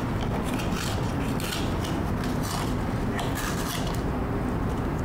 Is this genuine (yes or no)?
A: yes